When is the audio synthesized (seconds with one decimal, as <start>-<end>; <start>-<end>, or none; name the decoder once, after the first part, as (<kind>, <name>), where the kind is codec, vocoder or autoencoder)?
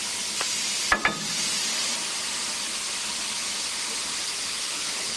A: 4.3-5.2 (autoencoder, DAC-VAE)